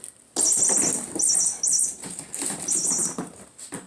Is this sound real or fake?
real